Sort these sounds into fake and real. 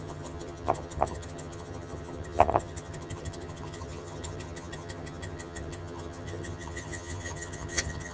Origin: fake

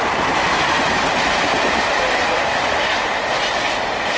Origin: real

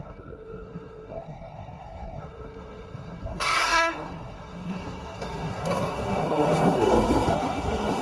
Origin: fake